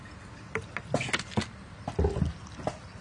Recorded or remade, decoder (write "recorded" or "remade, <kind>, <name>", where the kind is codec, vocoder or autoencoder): recorded